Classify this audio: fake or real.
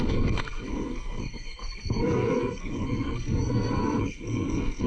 fake